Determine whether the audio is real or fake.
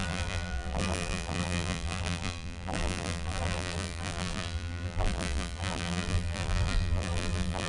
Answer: fake